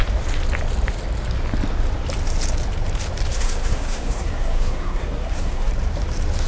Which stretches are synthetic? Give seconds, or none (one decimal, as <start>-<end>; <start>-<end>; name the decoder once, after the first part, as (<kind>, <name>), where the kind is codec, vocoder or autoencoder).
3.3-5.7 (codec, SNAC)